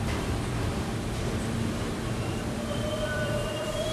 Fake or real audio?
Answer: fake